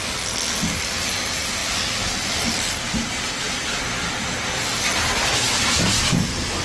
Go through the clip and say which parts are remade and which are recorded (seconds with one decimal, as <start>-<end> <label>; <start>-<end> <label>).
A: 0.0-6.6 recorded